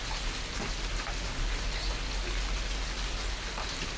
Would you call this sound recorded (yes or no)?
yes